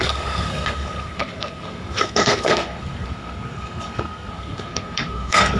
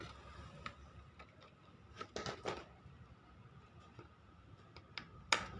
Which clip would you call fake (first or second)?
first